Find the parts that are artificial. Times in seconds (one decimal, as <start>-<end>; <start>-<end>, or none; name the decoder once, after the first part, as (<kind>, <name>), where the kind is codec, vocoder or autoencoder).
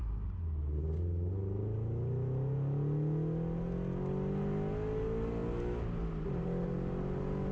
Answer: none